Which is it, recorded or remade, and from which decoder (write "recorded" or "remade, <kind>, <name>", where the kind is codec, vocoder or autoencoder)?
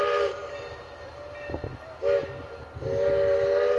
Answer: recorded